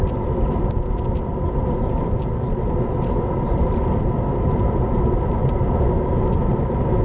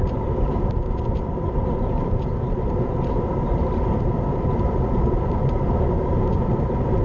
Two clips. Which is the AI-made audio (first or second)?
second